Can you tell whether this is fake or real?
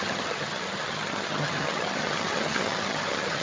fake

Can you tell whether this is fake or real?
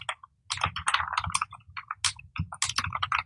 real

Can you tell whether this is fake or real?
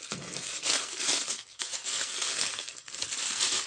fake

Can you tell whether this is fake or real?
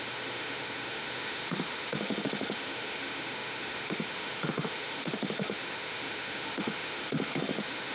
fake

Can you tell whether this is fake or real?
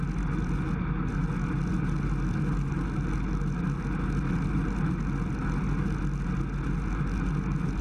real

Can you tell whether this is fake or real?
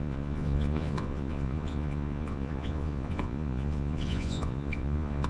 fake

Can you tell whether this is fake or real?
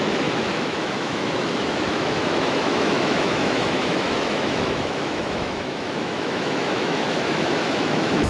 fake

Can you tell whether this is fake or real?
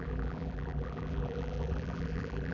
fake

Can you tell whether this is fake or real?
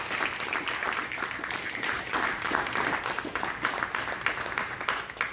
real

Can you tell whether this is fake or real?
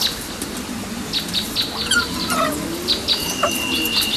real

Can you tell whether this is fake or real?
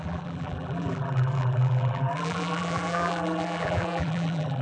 fake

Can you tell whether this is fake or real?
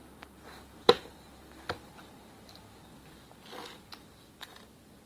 fake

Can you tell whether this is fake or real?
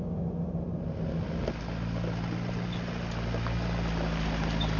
real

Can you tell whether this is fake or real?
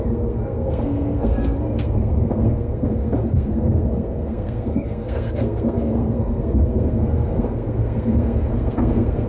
fake